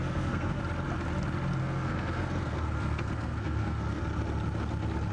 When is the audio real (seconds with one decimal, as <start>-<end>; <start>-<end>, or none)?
0.6-1.6; 4.0-5.1